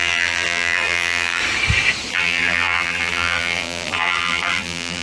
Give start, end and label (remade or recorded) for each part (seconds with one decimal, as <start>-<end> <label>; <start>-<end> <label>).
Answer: 0.0-1.4 remade; 1.4-2.1 recorded; 2.1-5.0 remade